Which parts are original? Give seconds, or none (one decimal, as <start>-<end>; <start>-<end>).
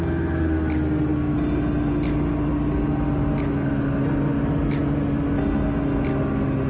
0.0-6.7